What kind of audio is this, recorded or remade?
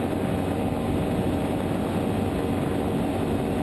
recorded